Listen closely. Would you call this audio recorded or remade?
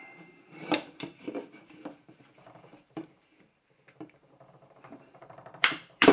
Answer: remade